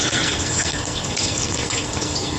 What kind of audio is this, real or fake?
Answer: fake